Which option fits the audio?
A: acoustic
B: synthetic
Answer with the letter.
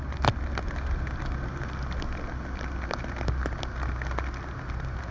A